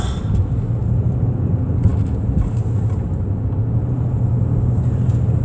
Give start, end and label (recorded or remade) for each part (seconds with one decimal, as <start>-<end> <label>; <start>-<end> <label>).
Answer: 0.0-0.8 recorded; 0.8-1.5 remade; 1.5-5.4 recorded